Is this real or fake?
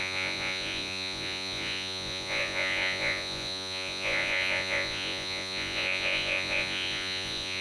fake